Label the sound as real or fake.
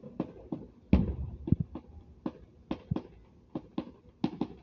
real